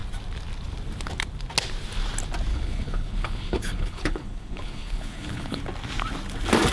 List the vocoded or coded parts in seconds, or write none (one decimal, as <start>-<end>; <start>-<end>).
2.5-5.6